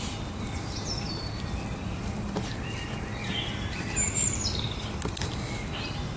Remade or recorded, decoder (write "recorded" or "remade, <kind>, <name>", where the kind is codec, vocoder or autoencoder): recorded